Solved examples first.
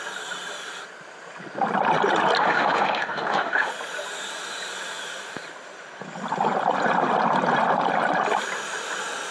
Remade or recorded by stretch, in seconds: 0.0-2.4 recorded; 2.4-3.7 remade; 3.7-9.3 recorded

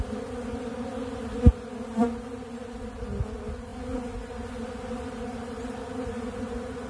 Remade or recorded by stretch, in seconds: 0.0-6.9 recorded